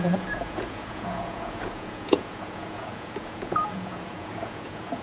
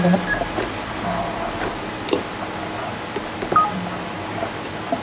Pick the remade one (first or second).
first